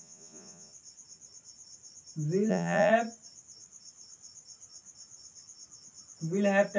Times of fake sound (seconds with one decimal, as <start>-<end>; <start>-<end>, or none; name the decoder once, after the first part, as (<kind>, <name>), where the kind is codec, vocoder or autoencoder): 0.0-0.7 (vocoder, Vocos); 2.5-2.9